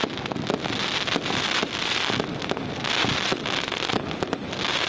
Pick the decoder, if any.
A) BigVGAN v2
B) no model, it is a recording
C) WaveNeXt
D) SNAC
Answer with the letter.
B